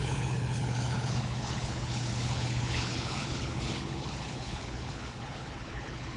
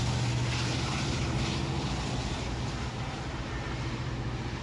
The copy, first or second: first